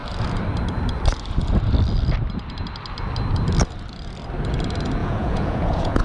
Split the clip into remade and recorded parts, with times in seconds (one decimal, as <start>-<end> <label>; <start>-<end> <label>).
0.0-5.0 recorded; 5.0-6.0 remade